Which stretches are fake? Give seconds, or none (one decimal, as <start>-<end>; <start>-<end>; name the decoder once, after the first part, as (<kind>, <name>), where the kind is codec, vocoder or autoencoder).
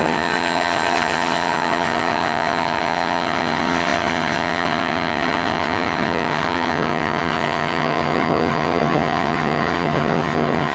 0.0-10.7 (vocoder, HiFi-GAN)